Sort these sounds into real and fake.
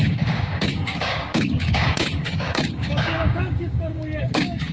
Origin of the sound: fake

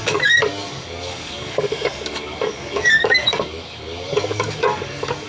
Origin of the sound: fake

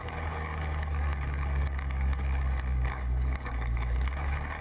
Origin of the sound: fake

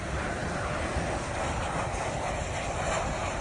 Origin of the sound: real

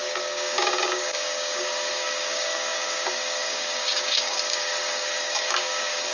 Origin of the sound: fake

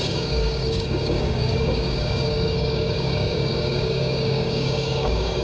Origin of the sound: fake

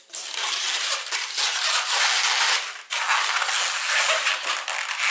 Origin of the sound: real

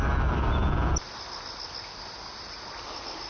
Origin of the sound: real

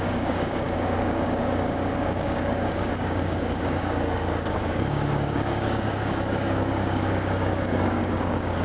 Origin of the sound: fake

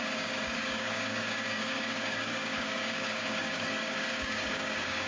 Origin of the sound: fake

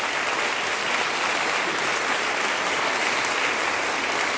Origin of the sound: real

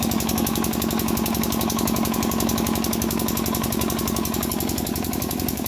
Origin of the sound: fake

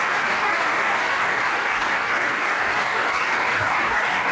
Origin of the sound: fake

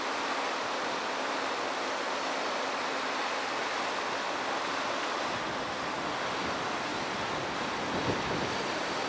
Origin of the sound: real